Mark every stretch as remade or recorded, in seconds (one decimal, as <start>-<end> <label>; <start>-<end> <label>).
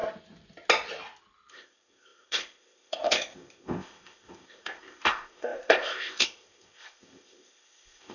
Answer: 0.0-1.5 recorded; 1.5-8.1 remade